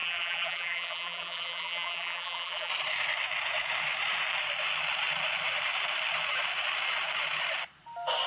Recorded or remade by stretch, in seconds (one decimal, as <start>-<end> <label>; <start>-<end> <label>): 0.0-2.7 remade; 2.7-8.3 recorded